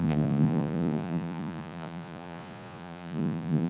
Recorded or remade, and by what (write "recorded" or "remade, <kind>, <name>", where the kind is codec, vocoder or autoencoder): remade, vocoder, Vocos